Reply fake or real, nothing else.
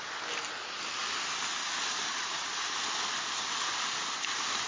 real